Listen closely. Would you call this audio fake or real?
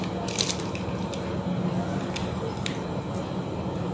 real